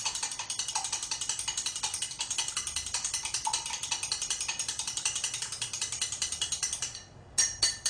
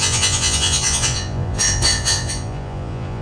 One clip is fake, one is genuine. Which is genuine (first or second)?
first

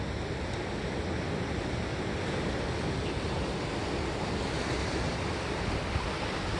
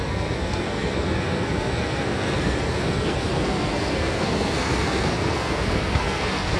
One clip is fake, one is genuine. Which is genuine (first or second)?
first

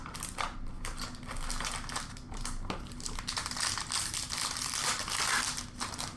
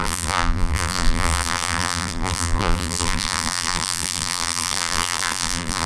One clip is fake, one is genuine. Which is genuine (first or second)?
first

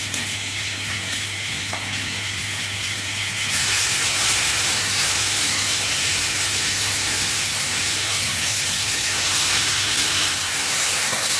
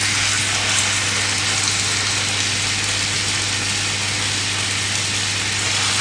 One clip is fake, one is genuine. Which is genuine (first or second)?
second